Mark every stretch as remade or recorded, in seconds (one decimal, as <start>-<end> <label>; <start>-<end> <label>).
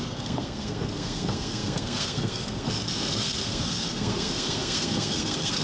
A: 0.0-5.6 remade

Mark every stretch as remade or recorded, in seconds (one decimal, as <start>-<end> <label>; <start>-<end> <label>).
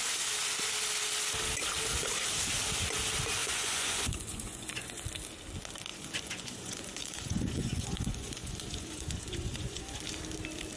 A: 0.0-3.4 recorded; 3.4-5.0 remade; 5.0-5.9 recorded; 5.9-10.0 remade; 10.0-10.8 recorded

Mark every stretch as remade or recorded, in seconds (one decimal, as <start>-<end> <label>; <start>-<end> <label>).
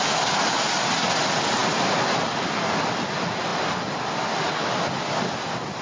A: 0.0-5.8 recorded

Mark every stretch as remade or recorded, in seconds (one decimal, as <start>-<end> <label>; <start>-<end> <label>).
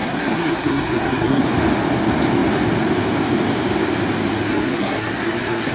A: 0.0-1.4 remade; 1.4-4.5 recorded; 4.5-5.7 remade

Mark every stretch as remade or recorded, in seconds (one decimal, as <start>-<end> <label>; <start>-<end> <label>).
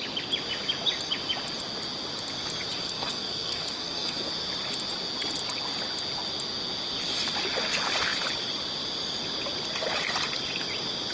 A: 0.0-2.8 recorded; 2.8-4.3 remade; 4.3-11.1 recorded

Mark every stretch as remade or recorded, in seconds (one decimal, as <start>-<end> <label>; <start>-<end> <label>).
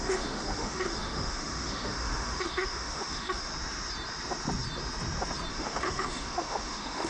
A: 0.0-3.5 remade; 3.5-5.5 recorded; 5.5-7.1 remade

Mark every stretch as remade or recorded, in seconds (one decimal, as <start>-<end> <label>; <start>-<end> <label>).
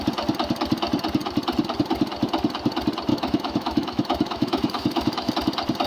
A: 0.0-3.1 recorded; 3.1-5.3 remade; 5.3-5.9 recorded